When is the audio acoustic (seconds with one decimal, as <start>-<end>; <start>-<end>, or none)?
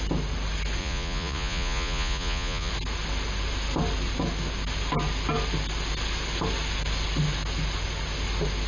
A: 0.0-0.8; 2.7-8.7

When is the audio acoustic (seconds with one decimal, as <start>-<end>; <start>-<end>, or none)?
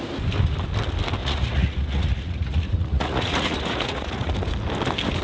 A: 0.0-1.2; 4.3-5.2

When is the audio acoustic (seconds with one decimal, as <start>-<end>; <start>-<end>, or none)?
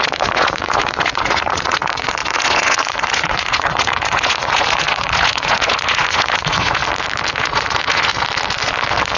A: 6.8-7.3; 8.1-9.2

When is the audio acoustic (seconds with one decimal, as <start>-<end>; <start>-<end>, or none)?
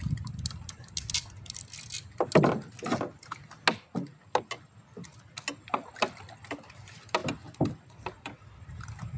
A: 0.0-9.2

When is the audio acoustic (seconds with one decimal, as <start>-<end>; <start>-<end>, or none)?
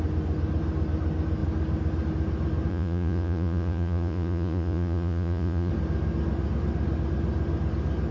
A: 0.0-2.7; 5.7-8.1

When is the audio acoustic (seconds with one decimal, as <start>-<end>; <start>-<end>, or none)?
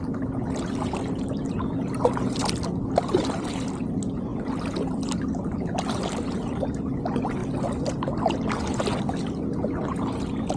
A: 0.0-10.6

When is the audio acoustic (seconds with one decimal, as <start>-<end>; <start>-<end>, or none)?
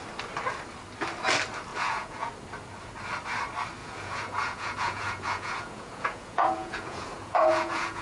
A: 0.0-1.7; 2.3-3.8